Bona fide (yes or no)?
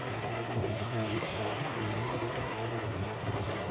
no